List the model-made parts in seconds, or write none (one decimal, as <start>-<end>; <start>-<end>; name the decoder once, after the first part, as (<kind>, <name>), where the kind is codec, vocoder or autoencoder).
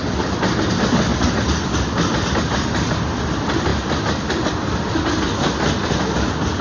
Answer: none